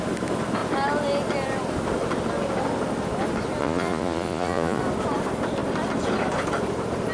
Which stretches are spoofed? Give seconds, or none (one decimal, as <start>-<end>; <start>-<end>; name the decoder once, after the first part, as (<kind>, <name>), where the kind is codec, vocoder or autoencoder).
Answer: 3.6-4.8 (vocoder, Vocos)